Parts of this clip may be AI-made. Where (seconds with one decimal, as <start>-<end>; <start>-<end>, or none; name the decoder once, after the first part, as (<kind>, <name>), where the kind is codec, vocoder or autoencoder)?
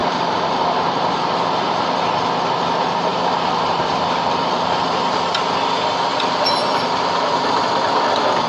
0.0-1.8 (vocoder, BigVGAN v2); 3.1-4.7; 6.1-7.6